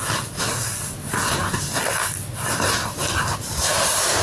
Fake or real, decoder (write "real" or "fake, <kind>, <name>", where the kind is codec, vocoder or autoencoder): real